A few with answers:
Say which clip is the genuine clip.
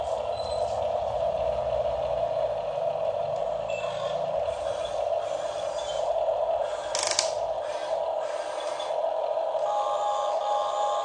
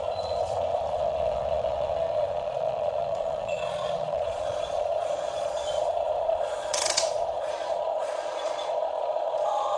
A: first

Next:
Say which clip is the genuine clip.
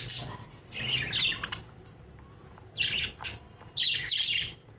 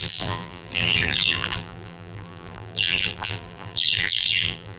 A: first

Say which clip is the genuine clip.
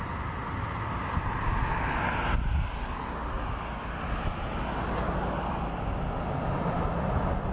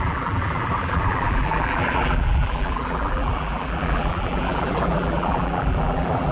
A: first